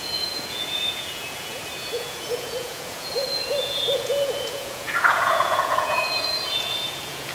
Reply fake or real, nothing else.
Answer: fake